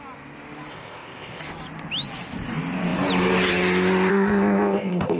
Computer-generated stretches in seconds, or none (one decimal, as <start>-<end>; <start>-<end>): 0.7-1.4; 4.1-5.2